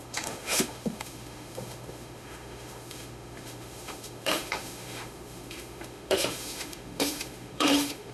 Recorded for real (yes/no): no